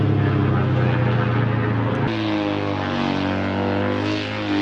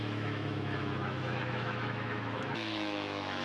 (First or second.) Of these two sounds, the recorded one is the first